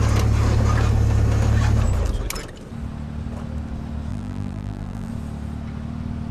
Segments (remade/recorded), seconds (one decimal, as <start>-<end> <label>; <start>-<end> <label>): 0.0-4.1 recorded; 4.1-5.1 remade; 5.1-6.3 recorded